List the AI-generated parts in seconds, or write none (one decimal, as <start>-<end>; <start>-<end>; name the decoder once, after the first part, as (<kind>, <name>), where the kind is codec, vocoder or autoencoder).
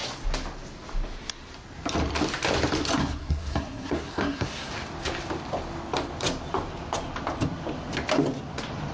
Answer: 3.0-4.7 (codec, SNAC)